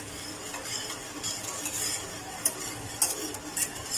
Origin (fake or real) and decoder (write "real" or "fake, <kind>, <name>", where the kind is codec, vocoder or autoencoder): real